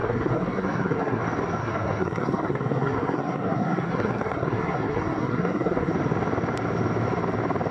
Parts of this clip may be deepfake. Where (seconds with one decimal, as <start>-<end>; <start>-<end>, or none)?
0.0-1.2; 1.6-5.9